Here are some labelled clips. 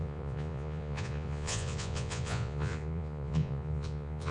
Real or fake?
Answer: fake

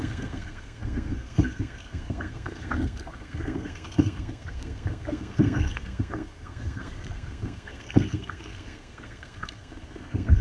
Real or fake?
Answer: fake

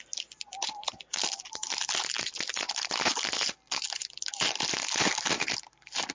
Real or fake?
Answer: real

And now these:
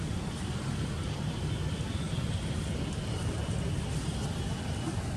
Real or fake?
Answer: real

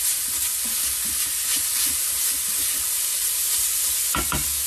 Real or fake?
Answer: real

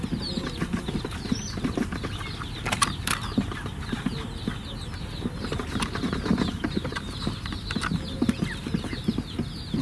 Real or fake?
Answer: real